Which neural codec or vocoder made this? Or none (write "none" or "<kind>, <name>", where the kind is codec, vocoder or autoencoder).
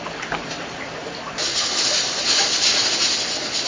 none